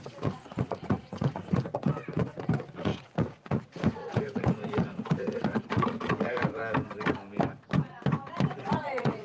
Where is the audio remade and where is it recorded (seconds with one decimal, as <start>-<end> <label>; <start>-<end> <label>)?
0.0-6.6 remade; 6.6-8.5 recorded; 8.5-9.2 remade